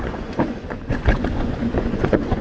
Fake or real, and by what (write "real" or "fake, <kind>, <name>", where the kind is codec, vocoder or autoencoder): fake, vocoder, Vocos